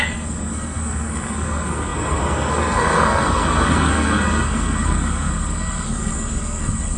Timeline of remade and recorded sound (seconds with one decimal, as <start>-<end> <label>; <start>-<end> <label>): 0.0-7.0 remade